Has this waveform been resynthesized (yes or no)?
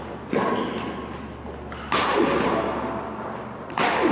no